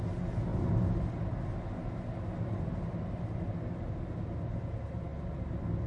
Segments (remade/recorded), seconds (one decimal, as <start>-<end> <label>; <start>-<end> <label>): 0.0-5.9 recorded